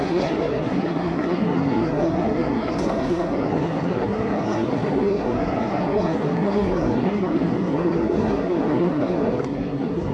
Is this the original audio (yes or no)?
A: no